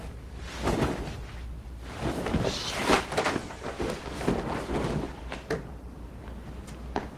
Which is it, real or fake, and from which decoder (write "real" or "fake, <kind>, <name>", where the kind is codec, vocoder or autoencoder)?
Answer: real